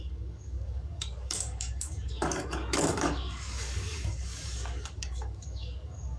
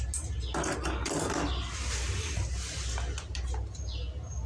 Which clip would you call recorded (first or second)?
second